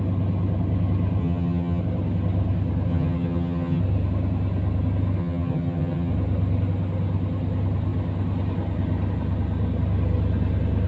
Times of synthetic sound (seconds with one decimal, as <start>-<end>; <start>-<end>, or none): 1.2-1.8; 2.9-3.8; 5.2-6.1

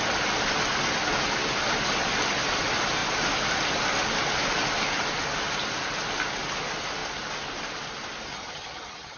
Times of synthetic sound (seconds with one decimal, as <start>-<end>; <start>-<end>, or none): 8.3-9.2

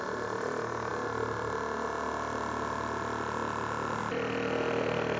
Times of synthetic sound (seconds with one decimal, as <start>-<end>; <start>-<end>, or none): none

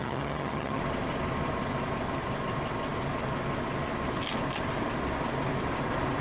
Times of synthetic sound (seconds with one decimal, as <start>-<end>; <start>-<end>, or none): 0.0-0.8

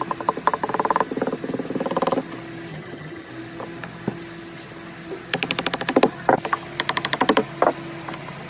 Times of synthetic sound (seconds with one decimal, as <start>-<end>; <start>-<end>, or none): 2.7-3.3

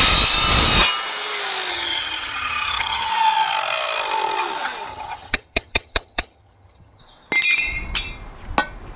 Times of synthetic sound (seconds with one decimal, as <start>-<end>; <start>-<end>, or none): 1.7-3.1; 4.9-7.0

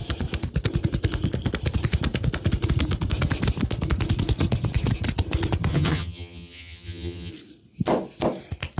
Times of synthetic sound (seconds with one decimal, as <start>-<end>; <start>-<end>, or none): 5.7-7.3

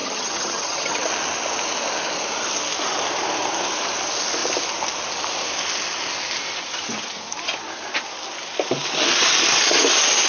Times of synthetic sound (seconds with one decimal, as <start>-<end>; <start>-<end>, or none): 0.0-1.1